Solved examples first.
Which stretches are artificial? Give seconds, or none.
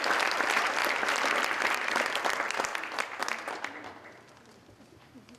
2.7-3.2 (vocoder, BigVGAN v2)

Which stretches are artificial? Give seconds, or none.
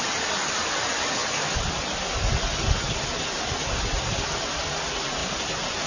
1.2-2.3 (vocoder, BigVGAN v2); 5.2-5.9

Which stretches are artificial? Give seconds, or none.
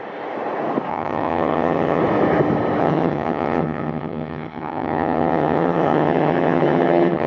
0.9-2.0 (vocoder, HiFi-GAN); 2.8-7.3